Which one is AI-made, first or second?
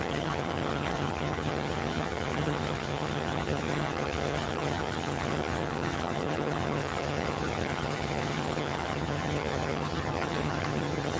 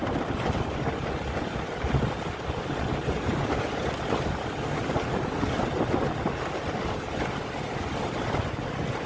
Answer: first